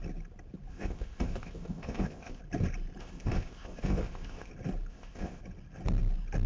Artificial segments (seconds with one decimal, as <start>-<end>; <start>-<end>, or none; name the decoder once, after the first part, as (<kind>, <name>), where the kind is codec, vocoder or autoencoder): 0.7-2.4 (codec, ZipCodec); 3.0-4.5; 4.9-5.4